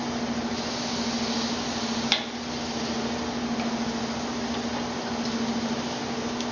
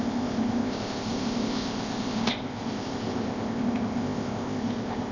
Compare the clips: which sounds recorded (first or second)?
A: first